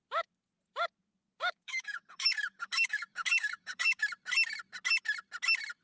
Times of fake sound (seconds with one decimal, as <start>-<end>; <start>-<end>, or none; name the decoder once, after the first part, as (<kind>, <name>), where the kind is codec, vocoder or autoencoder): 1.0-4.0 (codec, DAC)